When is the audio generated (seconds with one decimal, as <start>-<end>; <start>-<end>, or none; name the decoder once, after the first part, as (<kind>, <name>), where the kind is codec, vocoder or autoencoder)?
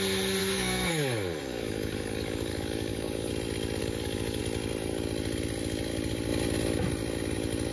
0.4-3.3 (codec, DAC); 3.8-4.4